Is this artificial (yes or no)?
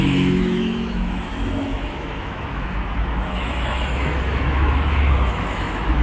yes